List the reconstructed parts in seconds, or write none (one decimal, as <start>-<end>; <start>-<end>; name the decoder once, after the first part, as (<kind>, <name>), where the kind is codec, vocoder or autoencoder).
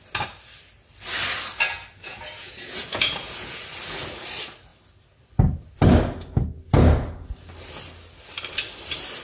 2.0-3.6 (vocoder, Vocos)